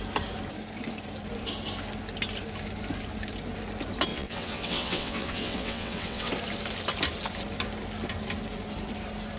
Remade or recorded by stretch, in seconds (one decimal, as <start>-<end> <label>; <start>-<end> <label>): 0.0-4.1 recorded; 4.1-6.3 remade; 6.3-9.4 recorded